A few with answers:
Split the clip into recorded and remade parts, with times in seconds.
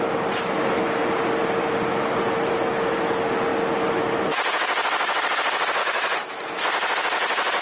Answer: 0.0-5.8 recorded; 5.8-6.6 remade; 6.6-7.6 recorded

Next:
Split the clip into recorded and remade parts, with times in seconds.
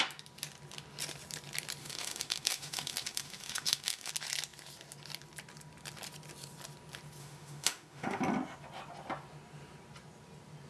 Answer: 0.0-1.8 recorded; 1.8-4.1 remade; 4.1-7.2 recorded; 7.2-8.2 remade; 8.2-10.7 recorded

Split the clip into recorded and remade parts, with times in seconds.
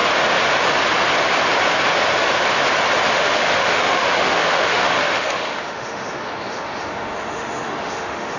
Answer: 0.0-3.1 recorded; 3.1-8.4 remade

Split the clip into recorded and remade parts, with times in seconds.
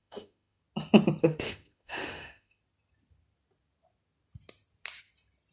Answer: 0.0-0.6 remade; 0.6-1.2 recorded; 1.2-2.6 remade; 2.6-5.5 recorded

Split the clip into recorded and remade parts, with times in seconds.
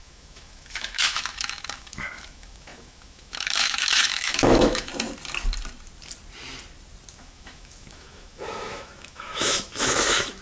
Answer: 0.0-4.9 remade; 4.9-7.1 recorded; 7.1-10.4 remade